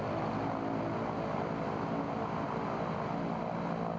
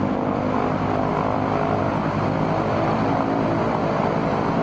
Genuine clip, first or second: first